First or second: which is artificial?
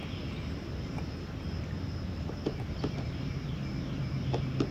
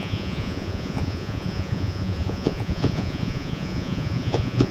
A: second